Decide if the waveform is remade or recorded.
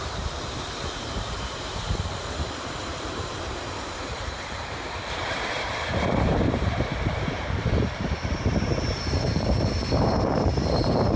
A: remade